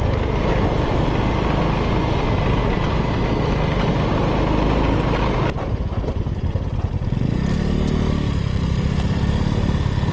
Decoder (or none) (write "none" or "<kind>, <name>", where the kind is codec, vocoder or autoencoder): none